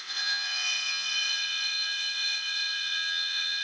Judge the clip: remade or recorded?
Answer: remade